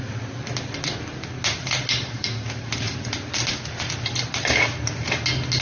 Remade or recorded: recorded